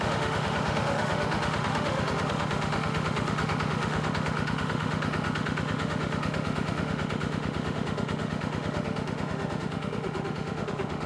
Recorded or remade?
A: remade